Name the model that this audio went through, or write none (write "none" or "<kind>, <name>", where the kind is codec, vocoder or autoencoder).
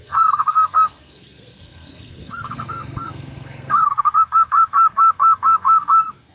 codec, SNAC